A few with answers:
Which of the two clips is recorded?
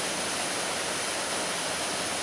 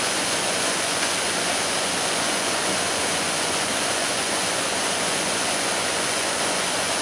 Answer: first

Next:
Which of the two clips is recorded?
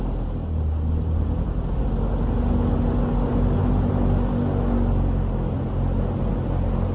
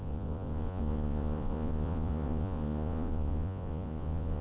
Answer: first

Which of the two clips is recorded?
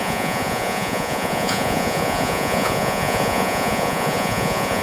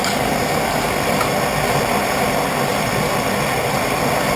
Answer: second